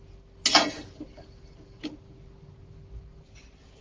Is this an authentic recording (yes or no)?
yes